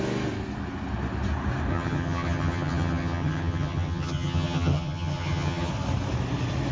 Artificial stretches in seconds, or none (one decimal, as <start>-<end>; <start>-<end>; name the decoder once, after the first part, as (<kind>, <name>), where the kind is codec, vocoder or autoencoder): 1.7-5.7 (vocoder, HiFi-GAN)